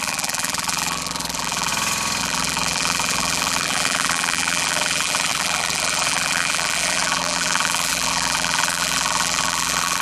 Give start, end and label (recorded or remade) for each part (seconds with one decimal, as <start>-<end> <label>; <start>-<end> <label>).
0.0-1.7 remade; 1.7-2.2 recorded; 2.2-10.0 remade